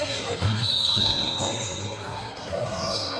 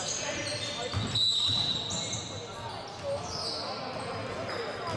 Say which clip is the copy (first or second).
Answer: first